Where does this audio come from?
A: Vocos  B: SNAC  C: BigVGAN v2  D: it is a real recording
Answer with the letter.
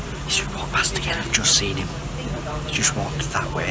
D